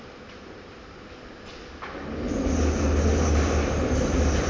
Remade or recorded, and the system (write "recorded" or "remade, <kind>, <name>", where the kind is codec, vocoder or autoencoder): recorded